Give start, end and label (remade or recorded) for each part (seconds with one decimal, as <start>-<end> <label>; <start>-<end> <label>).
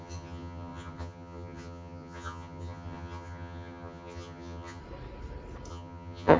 0.0-4.8 remade; 4.8-5.7 recorded; 5.7-6.4 remade